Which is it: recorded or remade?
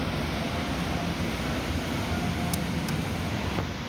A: recorded